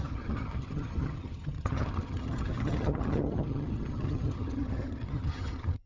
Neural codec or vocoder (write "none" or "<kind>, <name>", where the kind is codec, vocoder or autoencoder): vocoder, HiFi-GAN